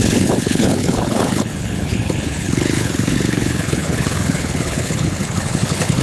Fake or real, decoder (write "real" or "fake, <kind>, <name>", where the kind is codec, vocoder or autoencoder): fake, codec, HILCodec